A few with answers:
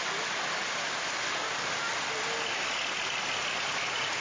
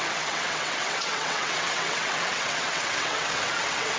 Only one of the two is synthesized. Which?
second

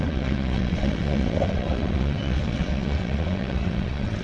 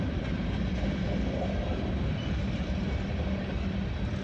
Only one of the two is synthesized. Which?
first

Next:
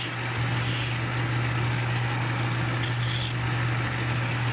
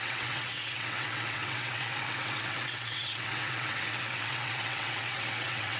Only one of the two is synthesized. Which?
second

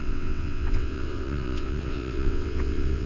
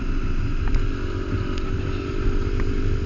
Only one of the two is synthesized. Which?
first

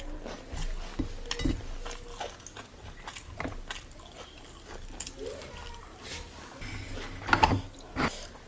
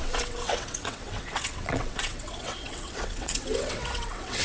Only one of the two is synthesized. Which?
second